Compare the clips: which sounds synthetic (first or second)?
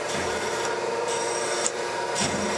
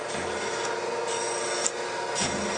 first